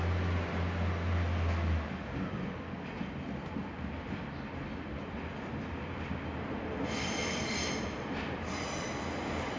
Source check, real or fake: real